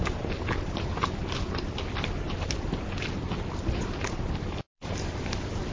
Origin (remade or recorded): recorded